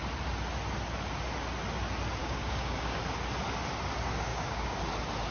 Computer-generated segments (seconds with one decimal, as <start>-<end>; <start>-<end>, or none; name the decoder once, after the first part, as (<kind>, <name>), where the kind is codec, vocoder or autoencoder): 2.2-3.0 (codec, DAC); 4.3-4.8